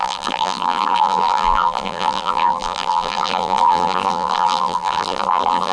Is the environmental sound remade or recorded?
remade